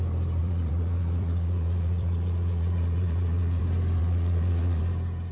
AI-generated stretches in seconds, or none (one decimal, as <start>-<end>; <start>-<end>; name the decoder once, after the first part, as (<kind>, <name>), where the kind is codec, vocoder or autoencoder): 0.4-3.6 (vocoder, Vocos); 4.0-4.8